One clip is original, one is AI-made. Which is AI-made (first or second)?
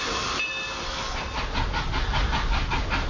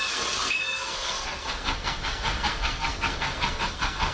second